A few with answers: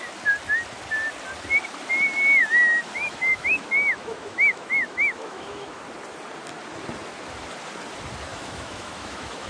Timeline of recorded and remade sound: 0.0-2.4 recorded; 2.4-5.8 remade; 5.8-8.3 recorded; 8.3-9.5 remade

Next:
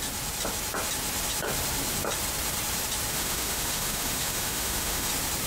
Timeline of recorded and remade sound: 0.0-3.1 recorded; 3.1-5.1 remade; 5.1-5.5 recorded

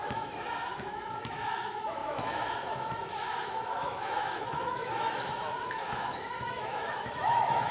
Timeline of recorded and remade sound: 0.0-7.7 remade

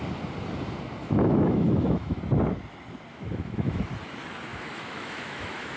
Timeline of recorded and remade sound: 0.0-1.0 recorded; 1.0-2.2 remade; 2.2-3.1 recorded; 3.1-3.8 remade; 3.8-4.5 recorded; 4.5-5.8 remade

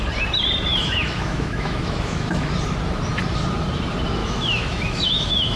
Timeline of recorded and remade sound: 0.0-0.7 recorded; 0.7-2.5 remade; 2.5-4.2 recorded; 4.2-5.6 remade